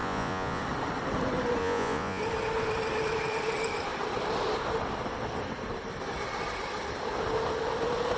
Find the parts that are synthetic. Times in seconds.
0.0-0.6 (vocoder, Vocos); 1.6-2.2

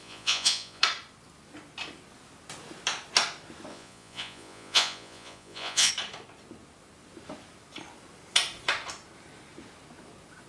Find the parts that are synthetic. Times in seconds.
0.0-0.8 (vocoder, Vocos); 3.7-5.9

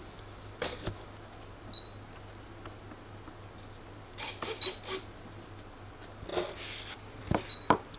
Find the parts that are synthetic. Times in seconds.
none

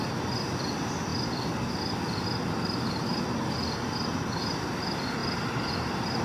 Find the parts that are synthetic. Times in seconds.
none